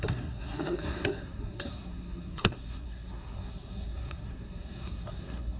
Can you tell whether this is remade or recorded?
remade